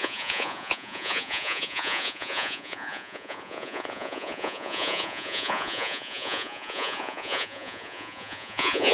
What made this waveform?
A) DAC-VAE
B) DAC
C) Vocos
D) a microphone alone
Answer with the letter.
C